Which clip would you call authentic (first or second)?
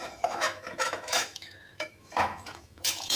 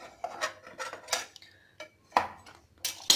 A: second